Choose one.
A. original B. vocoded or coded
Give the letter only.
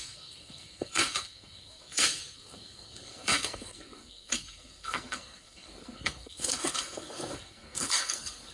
B